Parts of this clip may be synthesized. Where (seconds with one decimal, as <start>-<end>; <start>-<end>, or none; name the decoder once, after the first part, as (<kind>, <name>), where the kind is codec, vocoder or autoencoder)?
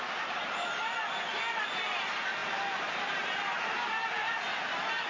none